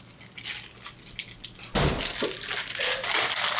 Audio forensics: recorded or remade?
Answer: recorded